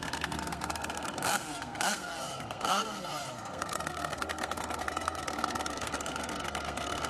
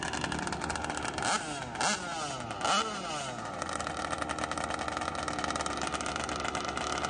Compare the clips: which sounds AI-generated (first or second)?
first